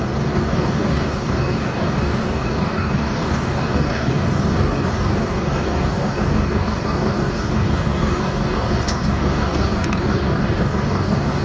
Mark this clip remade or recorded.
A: remade